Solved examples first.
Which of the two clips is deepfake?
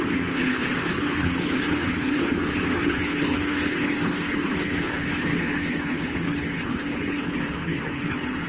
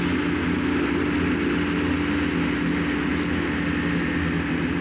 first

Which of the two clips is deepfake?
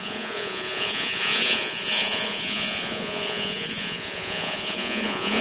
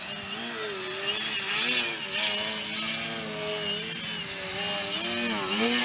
first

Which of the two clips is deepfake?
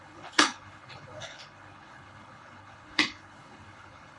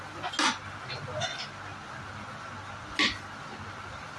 first